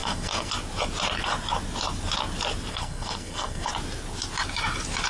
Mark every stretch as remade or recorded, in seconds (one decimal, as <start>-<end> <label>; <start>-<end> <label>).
0.0-0.5 remade; 0.5-2.7 recorded; 2.7-3.7 remade; 3.7-5.1 recorded